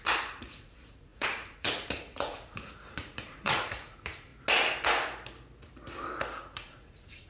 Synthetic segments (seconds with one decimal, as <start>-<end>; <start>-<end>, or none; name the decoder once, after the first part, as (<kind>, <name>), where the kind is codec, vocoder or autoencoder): 0.0-4.3 (vocoder, Vocos); 6.4-7.3